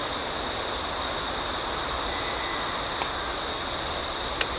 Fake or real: real